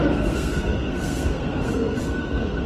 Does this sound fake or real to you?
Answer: fake